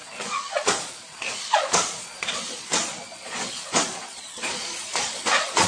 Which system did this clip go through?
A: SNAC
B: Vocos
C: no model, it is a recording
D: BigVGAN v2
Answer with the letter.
B